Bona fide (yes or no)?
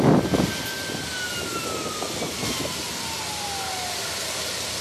yes